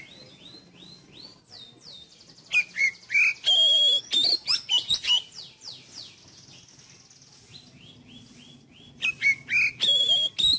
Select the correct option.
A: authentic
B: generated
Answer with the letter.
A